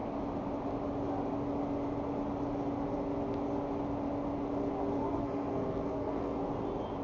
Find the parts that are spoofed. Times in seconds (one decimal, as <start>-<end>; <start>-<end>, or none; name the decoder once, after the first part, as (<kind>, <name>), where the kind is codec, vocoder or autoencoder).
5.0-6.5 (codec, SNAC)